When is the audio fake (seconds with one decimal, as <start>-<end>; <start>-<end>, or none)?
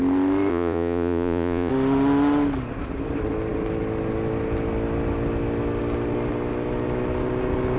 0.5-1.7